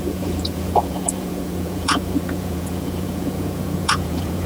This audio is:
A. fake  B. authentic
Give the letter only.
A